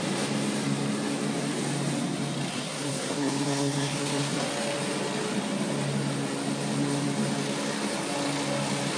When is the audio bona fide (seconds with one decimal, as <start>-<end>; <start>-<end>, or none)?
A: 0.0-2.5; 4.5-9.0